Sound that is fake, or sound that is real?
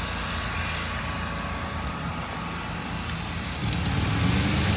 real